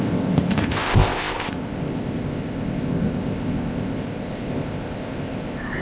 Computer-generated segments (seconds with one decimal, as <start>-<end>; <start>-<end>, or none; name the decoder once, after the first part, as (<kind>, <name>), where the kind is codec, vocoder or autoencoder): 0.0-5.8 (codec, ZipCodec)

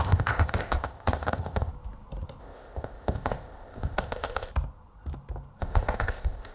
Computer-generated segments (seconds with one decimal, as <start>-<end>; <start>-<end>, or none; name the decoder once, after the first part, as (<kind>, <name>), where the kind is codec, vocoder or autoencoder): 0.0-1.7 (codec, ZipCodec); 2.4-4.5; 5.6-6.5

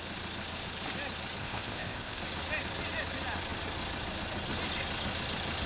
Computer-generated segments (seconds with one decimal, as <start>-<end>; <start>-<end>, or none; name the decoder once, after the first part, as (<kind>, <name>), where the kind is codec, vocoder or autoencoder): 1.4-2.2 (codec, ZipCodec)

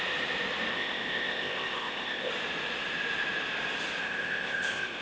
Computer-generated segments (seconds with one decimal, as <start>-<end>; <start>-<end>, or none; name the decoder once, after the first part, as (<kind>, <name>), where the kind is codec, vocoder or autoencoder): 0.7-2.3 (codec, ZipCodec); 4.0-5.0